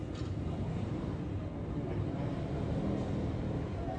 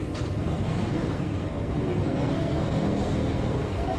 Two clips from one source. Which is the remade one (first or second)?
second